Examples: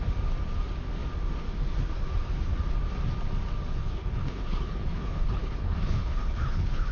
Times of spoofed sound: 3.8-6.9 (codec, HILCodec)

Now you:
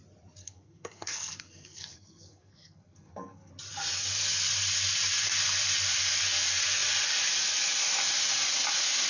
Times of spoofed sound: 0.4-3.5 (codec, SNAC)

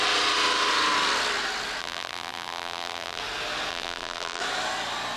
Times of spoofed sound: 1.8-3.2 (vocoder, BigVGAN v2); 3.7-4.4

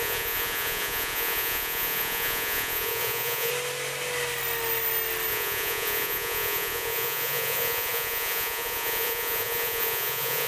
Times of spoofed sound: 0.0-3.5 (vocoder, Vocos); 5.3-10.5